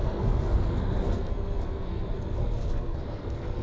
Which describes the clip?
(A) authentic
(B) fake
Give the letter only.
B